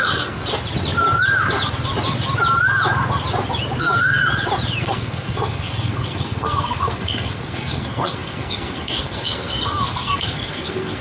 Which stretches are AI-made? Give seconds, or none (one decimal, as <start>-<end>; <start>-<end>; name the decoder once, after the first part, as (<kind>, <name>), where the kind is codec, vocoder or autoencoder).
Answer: 0.0-0.4 (codec, SNAC); 3.8-4.2; 4.8-11.0